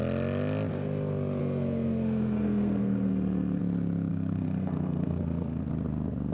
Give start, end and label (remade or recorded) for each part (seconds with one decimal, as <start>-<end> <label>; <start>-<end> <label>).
0.0-1.4 recorded; 1.4-3.6 remade; 3.6-4.1 recorded; 4.1-5.7 remade; 5.7-6.3 recorded